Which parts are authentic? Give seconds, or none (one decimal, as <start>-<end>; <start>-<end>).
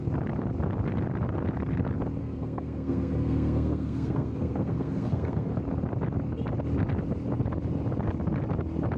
0.0-2.2; 5.6-9.0